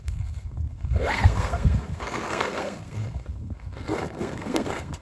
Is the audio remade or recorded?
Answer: remade